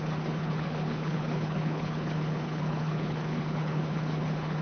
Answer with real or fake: fake